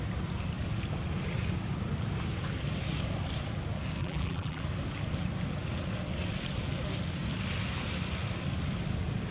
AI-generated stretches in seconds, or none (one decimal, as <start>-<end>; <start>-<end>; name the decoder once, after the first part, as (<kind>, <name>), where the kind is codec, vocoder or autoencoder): 4.0-4.6 (vocoder, BigVGAN v2)